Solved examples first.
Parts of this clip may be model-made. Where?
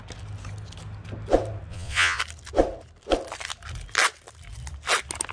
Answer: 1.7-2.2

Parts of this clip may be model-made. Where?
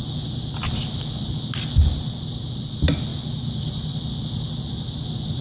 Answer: none